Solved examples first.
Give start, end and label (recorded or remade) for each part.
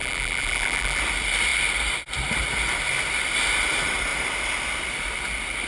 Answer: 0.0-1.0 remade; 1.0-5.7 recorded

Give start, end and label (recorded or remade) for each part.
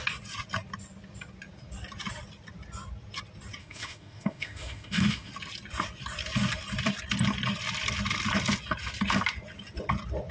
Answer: 0.0-3.6 recorded; 3.6-5.3 remade; 5.3-10.3 recorded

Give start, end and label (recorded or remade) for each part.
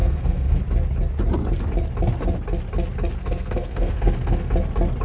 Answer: 0.0-0.6 remade; 0.6-3.2 recorded; 3.2-4.5 remade; 4.5-5.0 recorded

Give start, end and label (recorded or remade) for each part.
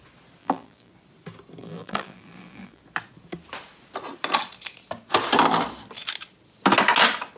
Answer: 0.0-0.4 recorded; 0.4-0.9 remade; 0.9-1.6 recorded; 1.6-2.8 remade; 2.8-7.4 recorded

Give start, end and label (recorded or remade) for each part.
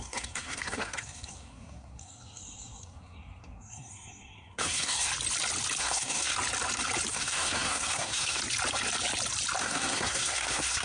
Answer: 0.0-5.1 remade; 5.1-5.8 recorded; 5.8-6.3 remade; 6.3-7.1 recorded; 7.1-8.4 remade; 8.4-9.6 recorded; 9.6-10.8 remade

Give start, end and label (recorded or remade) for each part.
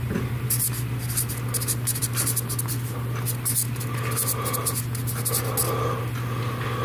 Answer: 0.0-6.8 recorded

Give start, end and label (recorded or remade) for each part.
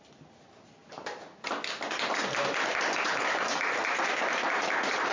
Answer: 0.0-5.1 recorded